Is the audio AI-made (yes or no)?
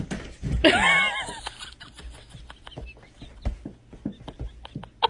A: no